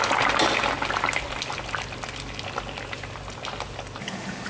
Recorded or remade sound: recorded